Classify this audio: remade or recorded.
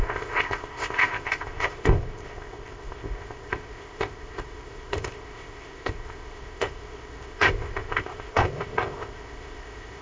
remade